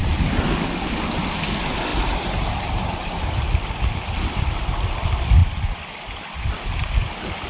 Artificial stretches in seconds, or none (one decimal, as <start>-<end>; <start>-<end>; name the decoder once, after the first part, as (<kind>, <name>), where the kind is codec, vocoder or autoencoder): 1.9-4.0 (vocoder, BigVGAN v2)